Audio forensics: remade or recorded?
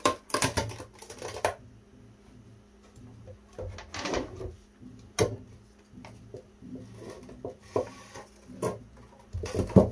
recorded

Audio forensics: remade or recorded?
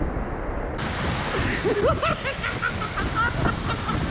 recorded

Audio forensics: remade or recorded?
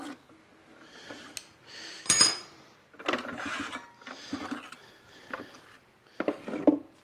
recorded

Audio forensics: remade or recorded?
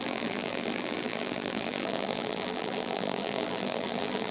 remade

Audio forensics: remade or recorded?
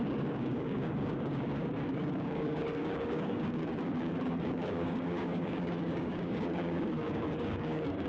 remade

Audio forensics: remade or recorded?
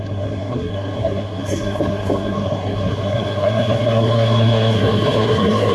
remade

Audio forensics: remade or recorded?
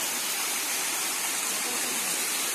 recorded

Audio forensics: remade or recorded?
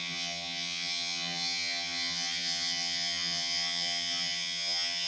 remade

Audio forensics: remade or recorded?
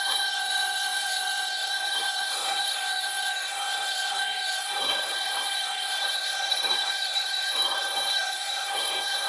remade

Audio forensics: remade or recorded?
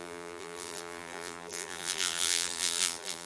remade